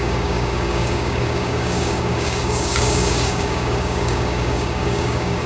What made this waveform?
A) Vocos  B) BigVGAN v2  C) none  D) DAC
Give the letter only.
D